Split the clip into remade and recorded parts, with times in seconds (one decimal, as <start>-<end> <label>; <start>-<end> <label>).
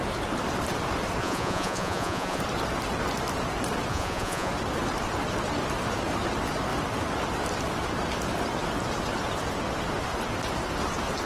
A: 0.0-1.2 recorded; 1.2-2.4 remade; 2.4-3.9 recorded; 3.9-4.5 remade; 4.5-11.3 recorded